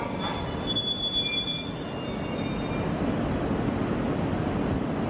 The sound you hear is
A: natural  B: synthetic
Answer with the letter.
A